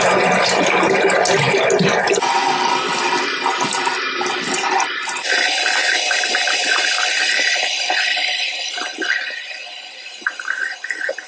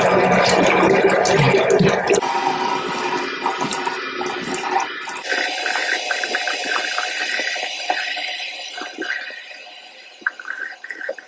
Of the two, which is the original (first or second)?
second